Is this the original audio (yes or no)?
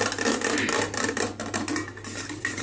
yes